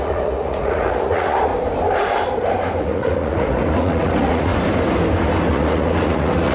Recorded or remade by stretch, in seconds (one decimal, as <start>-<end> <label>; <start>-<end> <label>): 0.0-1.5 remade; 1.5-2.8 recorded; 2.8-4.5 remade; 4.5-5.5 recorded; 5.5-6.5 remade

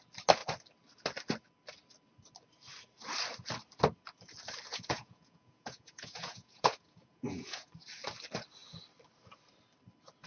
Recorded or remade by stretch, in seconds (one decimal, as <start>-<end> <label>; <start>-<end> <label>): 0.0-4.7 recorded; 4.7-7.7 remade; 7.7-10.3 recorded

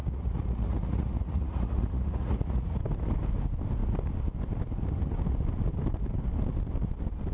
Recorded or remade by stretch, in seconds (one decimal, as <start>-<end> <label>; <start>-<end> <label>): 0.0-2.8 remade; 2.8-7.3 recorded

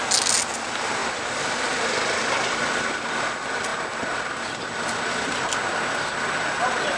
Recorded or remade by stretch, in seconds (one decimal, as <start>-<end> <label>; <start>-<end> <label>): 0.0-7.0 recorded

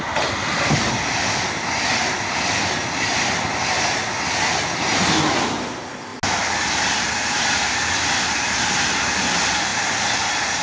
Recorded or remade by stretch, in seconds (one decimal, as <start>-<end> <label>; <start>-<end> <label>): 0.0-10.6 recorded

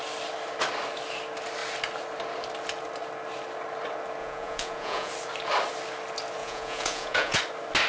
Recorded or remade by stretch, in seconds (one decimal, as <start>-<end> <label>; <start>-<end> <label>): 0.0-4.2 recorded; 4.2-5.1 remade; 5.1-6.4 recorded; 6.4-7.4 remade; 7.4-7.9 recorded

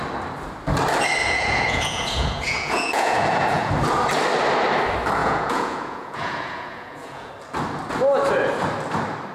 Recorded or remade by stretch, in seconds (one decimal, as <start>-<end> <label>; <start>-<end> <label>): 0.0-1.2 recorded; 1.2-3.7 remade; 3.7-5.2 recorded; 5.2-7.3 remade; 7.3-9.3 recorded